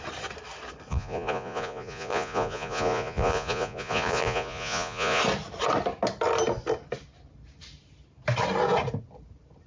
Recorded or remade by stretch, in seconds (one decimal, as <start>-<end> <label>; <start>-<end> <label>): 0.0-0.9 recorded; 0.9-5.2 remade; 5.2-9.7 recorded